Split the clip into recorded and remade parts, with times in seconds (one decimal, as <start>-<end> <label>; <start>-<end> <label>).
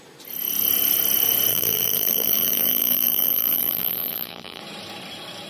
0.0-1.5 recorded; 1.5-4.6 remade; 4.6-5.5 recorded